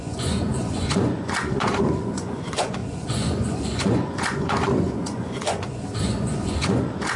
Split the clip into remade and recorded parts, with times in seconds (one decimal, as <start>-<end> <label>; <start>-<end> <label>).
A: 0.0-7.2 remade